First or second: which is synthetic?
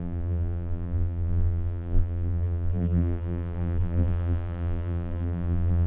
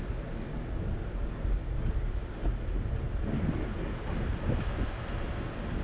first